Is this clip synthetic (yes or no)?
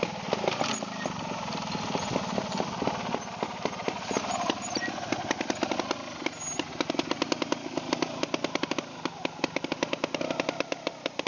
no